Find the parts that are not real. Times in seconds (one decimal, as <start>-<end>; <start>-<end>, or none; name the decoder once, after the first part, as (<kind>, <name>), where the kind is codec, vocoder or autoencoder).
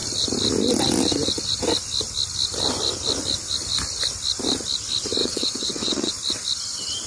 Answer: 5.2-6.1 (vocoder, WaveNeXt)